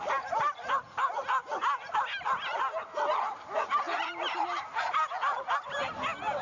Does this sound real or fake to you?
real